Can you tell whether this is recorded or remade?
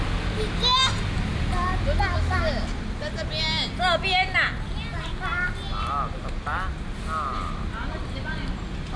recorded